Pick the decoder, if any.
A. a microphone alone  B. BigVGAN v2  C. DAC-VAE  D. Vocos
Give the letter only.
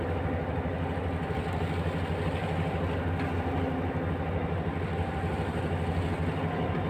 A